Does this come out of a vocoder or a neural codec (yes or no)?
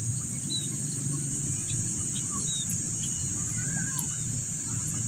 no